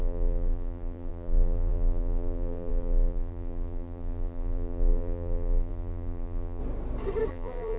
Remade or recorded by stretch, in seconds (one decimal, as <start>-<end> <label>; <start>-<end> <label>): 0.0-6.6 remade; 6.6-7.3 recorded; 7.3-7.8 remade